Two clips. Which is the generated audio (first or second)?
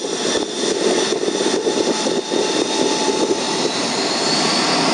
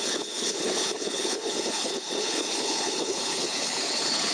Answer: second